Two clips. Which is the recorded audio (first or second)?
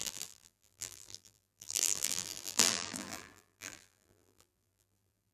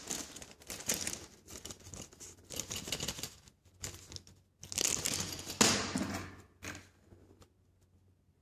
second